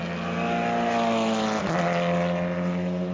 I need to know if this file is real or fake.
real